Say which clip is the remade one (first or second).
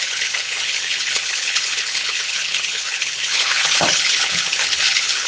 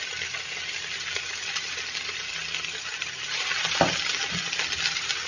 first